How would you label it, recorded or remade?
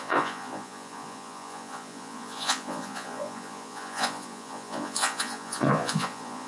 remade